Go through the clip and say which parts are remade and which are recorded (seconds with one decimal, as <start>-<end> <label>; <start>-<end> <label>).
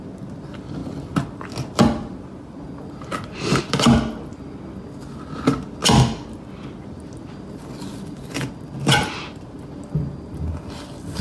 0.0-11.2 recorded